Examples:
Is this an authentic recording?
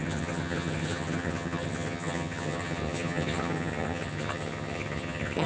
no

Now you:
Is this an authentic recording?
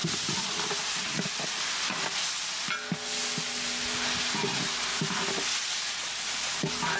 yes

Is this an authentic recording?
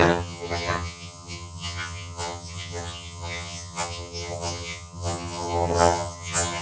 no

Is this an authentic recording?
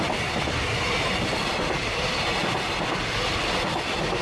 yes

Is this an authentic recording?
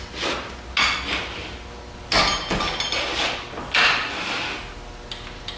yes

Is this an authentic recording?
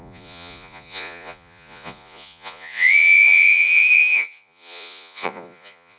no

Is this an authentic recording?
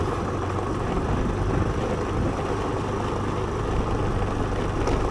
yes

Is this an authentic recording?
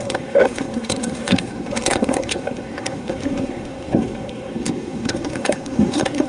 no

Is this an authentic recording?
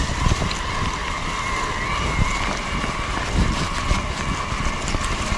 yes